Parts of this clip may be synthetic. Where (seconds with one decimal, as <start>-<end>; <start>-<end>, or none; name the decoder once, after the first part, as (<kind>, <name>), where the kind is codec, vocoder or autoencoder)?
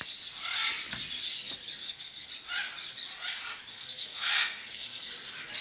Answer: 1.8-2.3 (codec, SNAC); 3.7-5.1